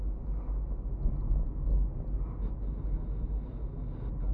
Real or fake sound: real